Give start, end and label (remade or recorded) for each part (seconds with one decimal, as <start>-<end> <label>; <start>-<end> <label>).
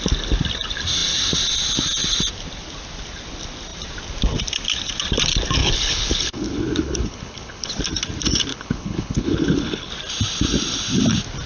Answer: 0.0-5.6 recorded; 5.6-7.7 remade; 7.7-8.5 recorded; 8.5-9.9 remade; 9.9-11.5 recorded